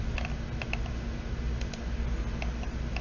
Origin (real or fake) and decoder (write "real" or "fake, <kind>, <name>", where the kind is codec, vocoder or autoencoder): real